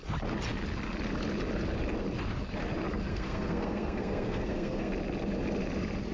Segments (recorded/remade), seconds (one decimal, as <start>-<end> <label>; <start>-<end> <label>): 0.0-3.1 recorded; 3.1-4.9 remade; 4.9-6.1 recorded